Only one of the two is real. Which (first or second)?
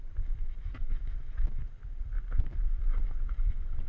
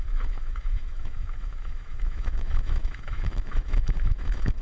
first